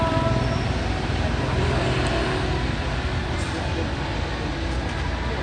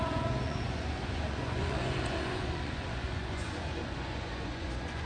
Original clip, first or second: first